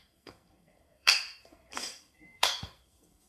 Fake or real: fake